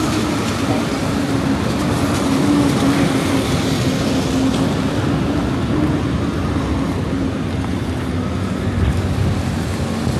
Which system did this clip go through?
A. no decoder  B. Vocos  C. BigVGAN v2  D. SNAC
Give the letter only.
A